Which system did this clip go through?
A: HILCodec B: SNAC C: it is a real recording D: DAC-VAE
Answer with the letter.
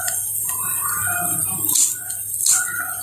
C